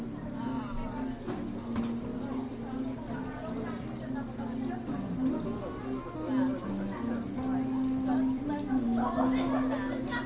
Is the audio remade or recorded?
recorded